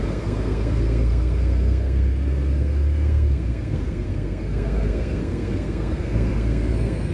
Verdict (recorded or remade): remade